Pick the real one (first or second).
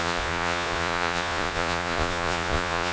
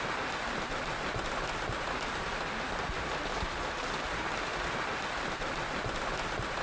second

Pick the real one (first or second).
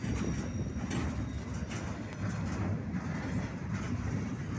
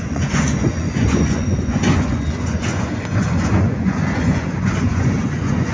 first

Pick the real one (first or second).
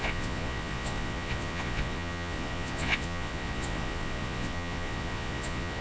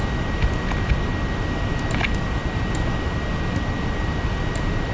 second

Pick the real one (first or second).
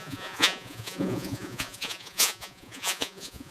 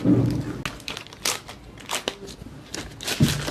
second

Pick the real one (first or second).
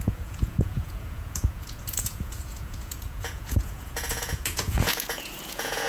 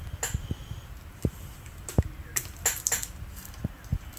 second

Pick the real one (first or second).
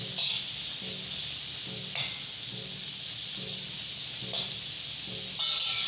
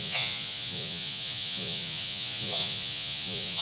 first